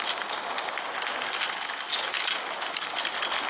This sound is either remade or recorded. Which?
recorded